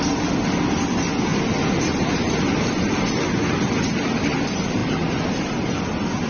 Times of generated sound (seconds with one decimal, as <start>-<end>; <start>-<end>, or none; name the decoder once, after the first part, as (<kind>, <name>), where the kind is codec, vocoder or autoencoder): 0.0-1.3 (vocoder, BigVGAN v2); 2.2-6.3

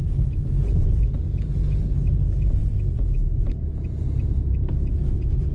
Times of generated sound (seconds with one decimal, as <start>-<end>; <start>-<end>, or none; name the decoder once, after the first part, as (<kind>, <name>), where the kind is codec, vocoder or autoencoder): 2.6-4.7 (vocoder, BigVGAN v2)

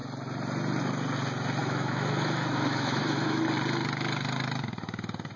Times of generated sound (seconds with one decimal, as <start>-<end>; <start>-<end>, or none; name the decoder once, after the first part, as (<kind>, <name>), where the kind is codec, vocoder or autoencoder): 1.6-3.4 (autoencoder, DAC-VAE)